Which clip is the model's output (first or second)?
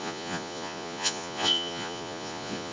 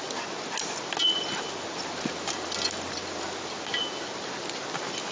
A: first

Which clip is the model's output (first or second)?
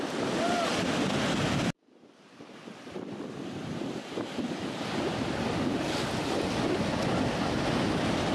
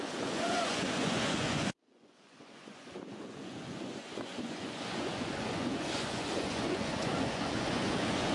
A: second